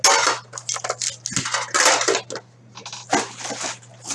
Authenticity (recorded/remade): recorded